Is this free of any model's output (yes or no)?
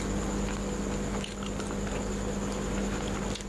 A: yes